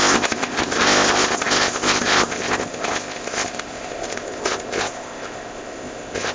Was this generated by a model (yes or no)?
yes